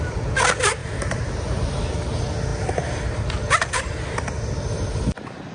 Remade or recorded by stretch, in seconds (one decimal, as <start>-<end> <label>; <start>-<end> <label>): 0.0-0.8 recorded; 0.8-1.8 remade; 1.8-5.5 recorded

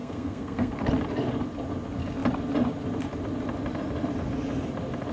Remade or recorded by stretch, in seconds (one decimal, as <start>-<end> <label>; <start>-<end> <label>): 0.0-0.7 remade; 0.7-5.1 recorded